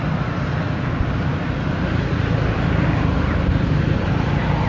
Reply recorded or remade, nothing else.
recorded